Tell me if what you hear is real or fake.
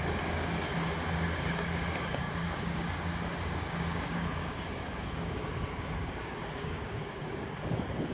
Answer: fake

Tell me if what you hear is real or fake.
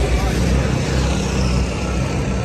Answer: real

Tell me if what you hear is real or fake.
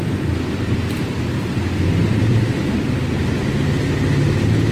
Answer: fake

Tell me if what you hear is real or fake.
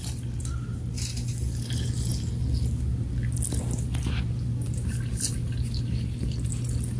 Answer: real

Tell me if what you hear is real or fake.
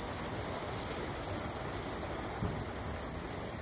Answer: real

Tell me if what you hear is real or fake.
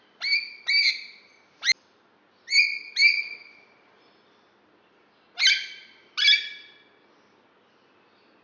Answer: real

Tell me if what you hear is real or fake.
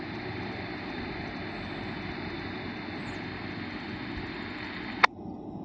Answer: real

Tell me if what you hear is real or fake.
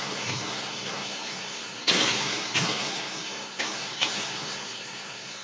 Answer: fake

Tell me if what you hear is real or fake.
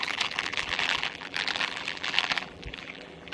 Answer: fake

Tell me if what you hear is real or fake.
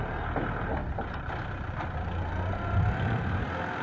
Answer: real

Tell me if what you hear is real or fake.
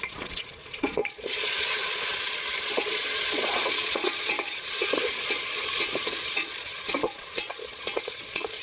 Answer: fake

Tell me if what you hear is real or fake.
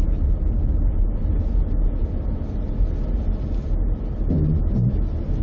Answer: real